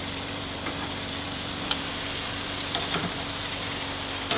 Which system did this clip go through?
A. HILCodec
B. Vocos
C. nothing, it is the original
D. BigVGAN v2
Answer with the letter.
D